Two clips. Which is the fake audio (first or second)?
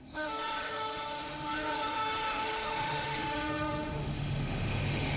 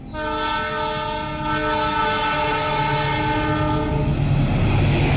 first